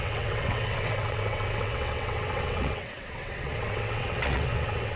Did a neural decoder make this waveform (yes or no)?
yes